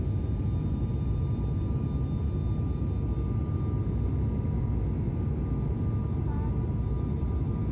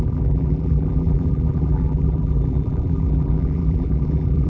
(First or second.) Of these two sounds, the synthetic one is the second